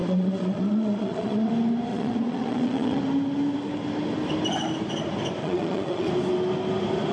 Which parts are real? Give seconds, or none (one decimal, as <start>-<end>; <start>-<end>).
1.5-1.9; 3.0-5.4; 6.1-7.1